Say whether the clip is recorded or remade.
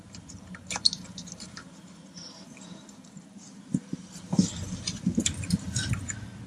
remade